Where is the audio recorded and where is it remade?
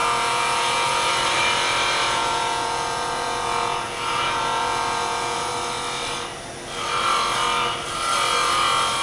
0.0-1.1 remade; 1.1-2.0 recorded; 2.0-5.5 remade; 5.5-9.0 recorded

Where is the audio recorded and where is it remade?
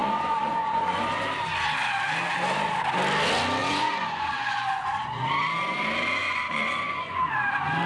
0.0-1.0 remade; 1.0-3.6 recorded; 3.6-5.2 remade; 5.2-6.2 recorded; 6.2-7.3 remade; 7.3-7.9 recorded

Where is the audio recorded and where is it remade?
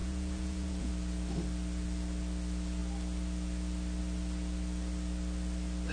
0.0-0.9 remade; 0.9-5.9 recorded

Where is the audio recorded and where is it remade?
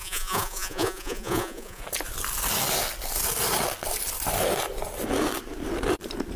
0.0-1.8 remade; 1.8-6.4 recorded